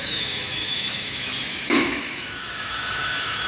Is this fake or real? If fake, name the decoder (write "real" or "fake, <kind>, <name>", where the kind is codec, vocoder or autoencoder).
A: fake, autoencoder, DAC-VAE